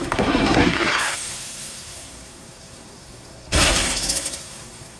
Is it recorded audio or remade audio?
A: remade